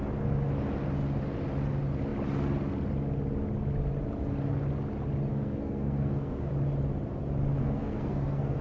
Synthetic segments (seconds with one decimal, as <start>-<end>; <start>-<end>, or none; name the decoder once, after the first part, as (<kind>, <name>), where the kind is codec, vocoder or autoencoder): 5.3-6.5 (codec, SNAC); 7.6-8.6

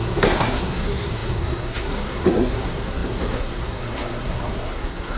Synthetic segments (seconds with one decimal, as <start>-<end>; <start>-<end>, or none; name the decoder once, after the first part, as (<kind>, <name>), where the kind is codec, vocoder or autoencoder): 0.0-5.2 (codec, SNAC)

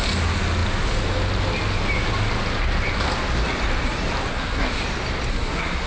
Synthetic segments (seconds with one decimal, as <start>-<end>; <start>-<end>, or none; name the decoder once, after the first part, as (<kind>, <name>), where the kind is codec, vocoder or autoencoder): 4.3-4.8 (codec, SNAC); 5.3-5.9